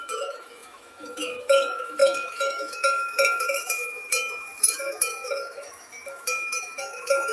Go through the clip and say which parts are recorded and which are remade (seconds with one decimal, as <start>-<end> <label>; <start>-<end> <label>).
0.0-7.3 remade